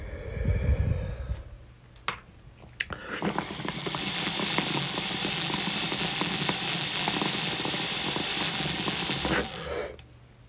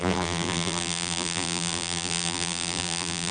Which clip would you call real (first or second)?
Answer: first